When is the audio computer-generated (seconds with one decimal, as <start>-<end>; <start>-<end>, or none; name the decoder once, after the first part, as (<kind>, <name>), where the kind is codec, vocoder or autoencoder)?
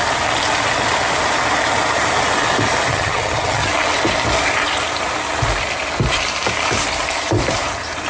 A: 2.9-3.7 (vocoder, HiFi-GAN)